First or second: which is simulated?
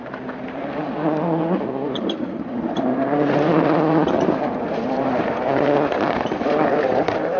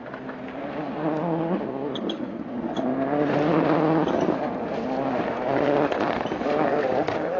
first